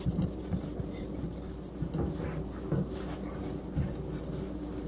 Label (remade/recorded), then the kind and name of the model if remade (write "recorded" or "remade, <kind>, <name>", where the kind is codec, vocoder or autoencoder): recorded